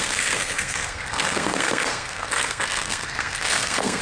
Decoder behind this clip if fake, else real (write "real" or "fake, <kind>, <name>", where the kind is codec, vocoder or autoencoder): fake, codec, SNAC